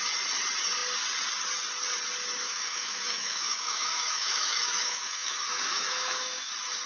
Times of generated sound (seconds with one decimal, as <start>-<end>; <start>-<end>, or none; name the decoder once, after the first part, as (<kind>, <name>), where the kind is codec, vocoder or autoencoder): 2.4-6.5 (autoencoder, DAC-VAE)